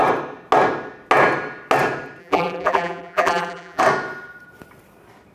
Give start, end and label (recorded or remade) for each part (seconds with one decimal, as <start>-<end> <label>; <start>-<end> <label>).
0.0-2.2 recorded; 2.2-3.8 remade; 3.8-5.3 recorded

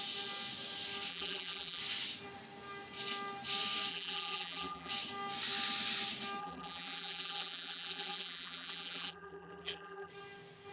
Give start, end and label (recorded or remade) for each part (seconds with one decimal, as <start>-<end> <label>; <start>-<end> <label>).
0.0-1.1 recorded; 1.1-1.8 remade; 1.8-3.9 recorded; 3.9-4.9 remade; 4.9-6.4 recorded; 6.4-10.1 remade; 10.1-10.7 recorded

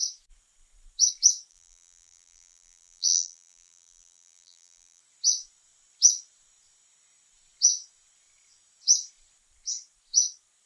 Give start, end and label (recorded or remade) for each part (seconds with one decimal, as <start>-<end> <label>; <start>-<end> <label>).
0.0-1.5 recorded; 1.5-5.0 remade; 5.0-10.7 recorded

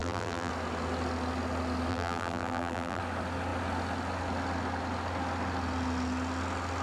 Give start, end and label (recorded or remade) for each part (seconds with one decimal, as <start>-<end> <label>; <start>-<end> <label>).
0.0-0.5 remade; 0.5-1.9 recorded; 1.9-3.0 remade; 3.0-6.8 recorded

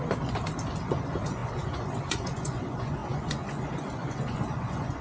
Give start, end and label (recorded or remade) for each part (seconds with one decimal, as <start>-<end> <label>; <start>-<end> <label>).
0.0-0.8 recorded; 0.8-5.0 remade